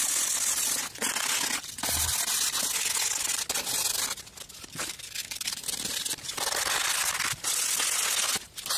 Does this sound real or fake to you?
real